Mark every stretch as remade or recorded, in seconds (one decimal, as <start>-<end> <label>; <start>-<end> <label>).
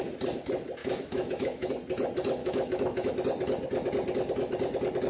0.0-0.8 recorded; 0.8-1.7 remade; 1.7-2.4 recorded; 2.4-3.1 remade; 3.1-5.1 recorded